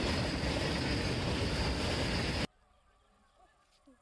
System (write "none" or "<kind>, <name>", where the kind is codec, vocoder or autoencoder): none